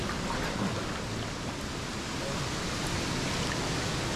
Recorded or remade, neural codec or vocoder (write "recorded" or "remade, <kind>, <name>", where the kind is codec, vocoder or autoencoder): recorded